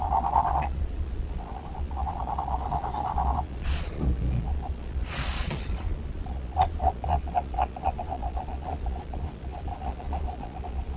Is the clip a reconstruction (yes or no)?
yes